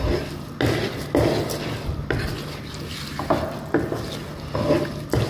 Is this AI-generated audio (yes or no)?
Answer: no